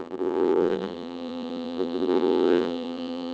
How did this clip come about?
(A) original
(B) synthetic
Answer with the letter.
B